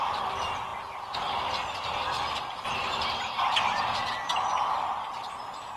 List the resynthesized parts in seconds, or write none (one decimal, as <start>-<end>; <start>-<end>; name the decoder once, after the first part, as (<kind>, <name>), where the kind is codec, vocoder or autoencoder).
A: none